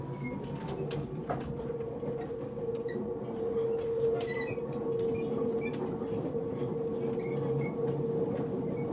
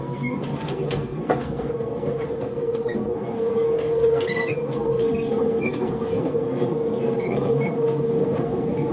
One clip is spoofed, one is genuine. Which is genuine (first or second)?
first